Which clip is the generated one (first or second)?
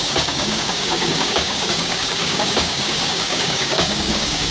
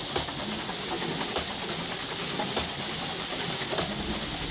first